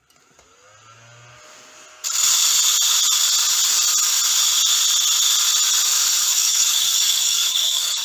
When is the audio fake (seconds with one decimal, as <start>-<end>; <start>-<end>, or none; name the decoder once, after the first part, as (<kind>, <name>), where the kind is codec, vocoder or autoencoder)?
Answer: 6.3-8.0 (codec, DAC)